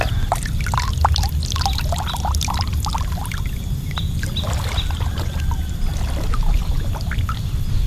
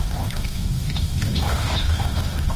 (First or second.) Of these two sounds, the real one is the first